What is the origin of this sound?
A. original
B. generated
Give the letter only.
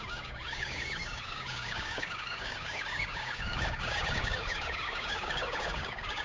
B